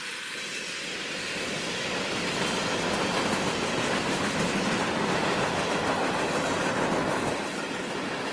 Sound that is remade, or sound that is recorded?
recorded